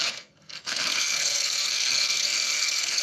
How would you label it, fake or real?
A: fake